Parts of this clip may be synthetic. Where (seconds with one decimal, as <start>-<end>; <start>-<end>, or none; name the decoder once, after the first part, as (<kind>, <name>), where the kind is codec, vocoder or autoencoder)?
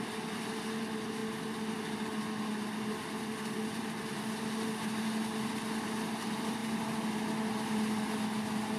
none